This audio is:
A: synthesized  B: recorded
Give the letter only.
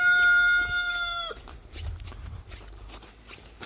B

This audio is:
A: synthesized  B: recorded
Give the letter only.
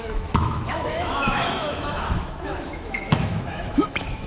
A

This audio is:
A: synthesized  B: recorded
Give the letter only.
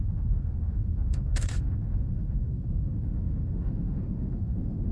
A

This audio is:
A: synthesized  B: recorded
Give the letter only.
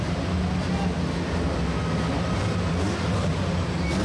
B